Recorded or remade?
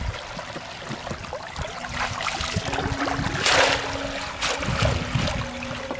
recorded